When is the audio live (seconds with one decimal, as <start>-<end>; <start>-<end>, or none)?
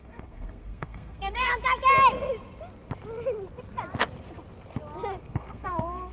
1.5-5.2